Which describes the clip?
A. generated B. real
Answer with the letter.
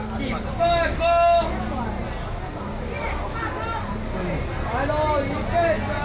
B